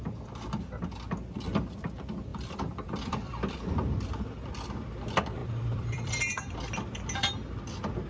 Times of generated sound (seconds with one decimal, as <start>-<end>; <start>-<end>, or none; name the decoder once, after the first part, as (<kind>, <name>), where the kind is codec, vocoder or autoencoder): 2.3-3.6 (vocoder, BigVGAN v2); 5.4-6.6